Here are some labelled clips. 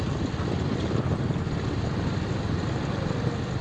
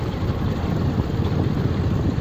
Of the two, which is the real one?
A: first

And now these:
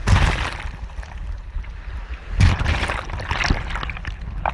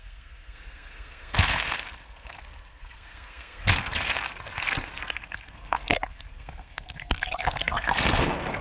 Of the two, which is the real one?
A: first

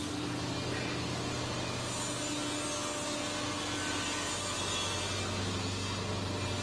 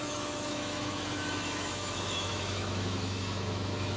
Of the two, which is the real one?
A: first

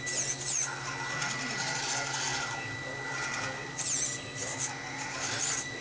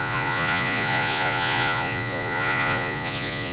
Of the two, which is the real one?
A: first